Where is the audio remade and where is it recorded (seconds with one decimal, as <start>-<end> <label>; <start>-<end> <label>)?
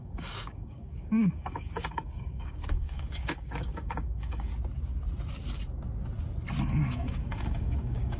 0.0-4.5 remade; 4.5-6.6 recorded; 6.6-8.2 remade